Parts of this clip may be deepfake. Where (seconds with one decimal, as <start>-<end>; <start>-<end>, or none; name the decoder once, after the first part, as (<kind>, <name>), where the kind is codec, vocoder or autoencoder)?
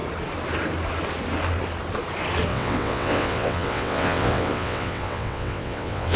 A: 2.5-6.2 (vocoder, WaveNeXt)